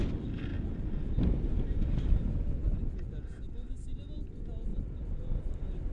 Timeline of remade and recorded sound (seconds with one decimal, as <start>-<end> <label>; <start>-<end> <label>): 0.0-0.5 remade; 0.5-1.2 recorded; 1.2-2.6 remade; 2.6-3.8 recorded; 3.8-4.7 remade; 4.7-5.9 recorded